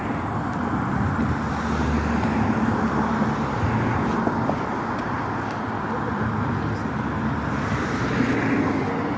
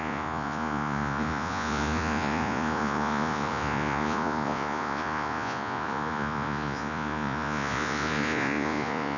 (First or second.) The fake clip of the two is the second